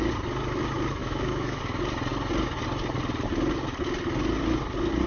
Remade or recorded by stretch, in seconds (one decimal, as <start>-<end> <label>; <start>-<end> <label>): 0.0-1.0 recorded; 1.0-1.6 remade; 1.6-5.1 recorded